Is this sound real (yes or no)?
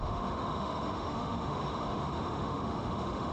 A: no